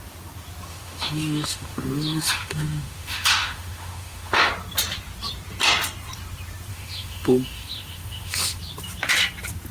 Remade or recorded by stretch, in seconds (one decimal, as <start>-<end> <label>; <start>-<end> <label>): 0.0-0.7 recorded; 0.7-4.5 remade; 4.5-6.7 recorded; 6.7-8.6 remade; 8.6-9.7 recorded